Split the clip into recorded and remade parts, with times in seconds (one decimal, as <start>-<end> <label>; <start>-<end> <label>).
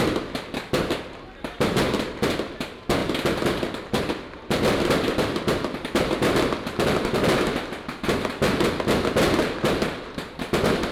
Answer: 0.0-10.9 recorded